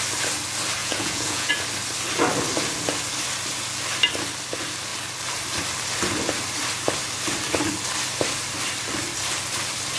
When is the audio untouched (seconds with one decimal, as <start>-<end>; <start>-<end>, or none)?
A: 0.0-0.8; 1.5-10.0